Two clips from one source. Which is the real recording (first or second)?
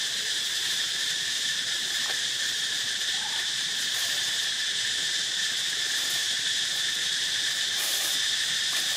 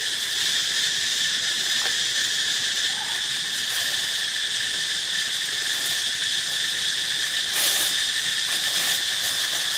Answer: second